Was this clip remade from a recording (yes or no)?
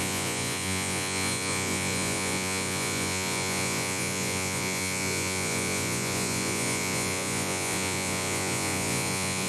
yes